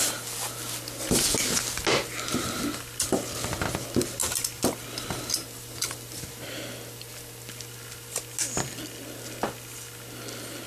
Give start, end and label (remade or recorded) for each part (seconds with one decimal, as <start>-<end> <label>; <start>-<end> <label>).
0.0-10.7 recorded